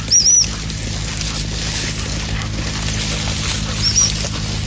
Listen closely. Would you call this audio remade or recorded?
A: recorded